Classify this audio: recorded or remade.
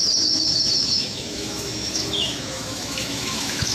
remade